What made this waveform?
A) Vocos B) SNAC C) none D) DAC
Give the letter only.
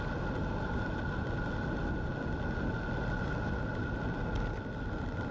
C